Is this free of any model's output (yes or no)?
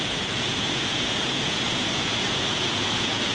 no